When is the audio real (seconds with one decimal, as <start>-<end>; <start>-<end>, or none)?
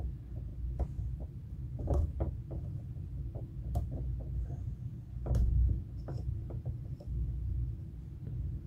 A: 0.0-0.5; 3.6-6.3; 7.5-8.7